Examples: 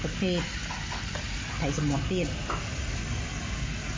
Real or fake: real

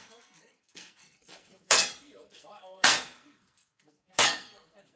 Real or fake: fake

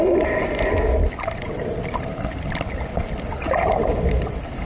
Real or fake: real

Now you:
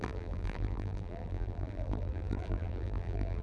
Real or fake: fake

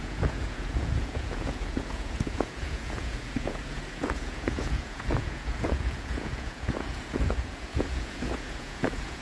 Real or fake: fake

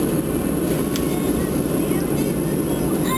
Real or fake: real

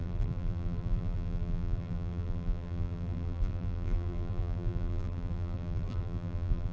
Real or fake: fake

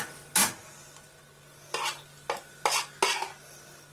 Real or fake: real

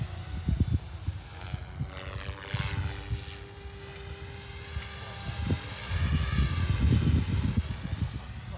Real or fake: real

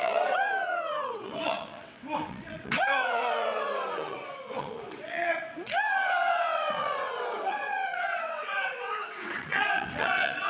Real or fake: fake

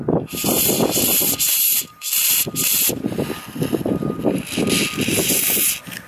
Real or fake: real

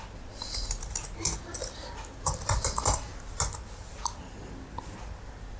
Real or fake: real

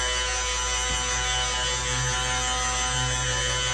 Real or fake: real